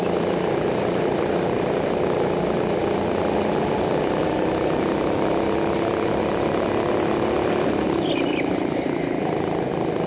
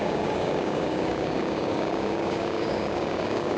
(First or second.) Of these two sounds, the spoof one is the second